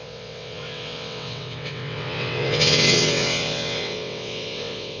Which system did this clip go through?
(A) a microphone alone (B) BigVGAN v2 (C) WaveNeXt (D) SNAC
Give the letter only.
C